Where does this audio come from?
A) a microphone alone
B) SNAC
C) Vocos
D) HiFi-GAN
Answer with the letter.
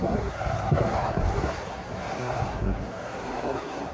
B